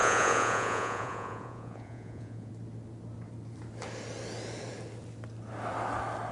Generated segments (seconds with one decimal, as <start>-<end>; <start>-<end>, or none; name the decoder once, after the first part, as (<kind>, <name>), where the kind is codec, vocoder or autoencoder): 0.0-2.5 (vocoder, Vocos)